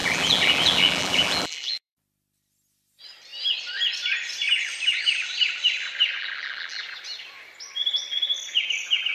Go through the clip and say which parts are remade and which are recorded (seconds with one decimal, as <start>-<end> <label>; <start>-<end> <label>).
0.0-2.0 remade; 2.0-6.2 recorded; 6.2-6.8 remade; 6.8-9.1 recorded